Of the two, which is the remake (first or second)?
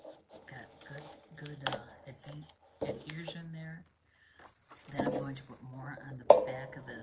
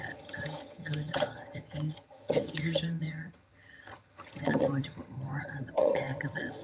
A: second